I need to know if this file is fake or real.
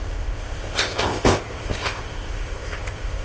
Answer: fake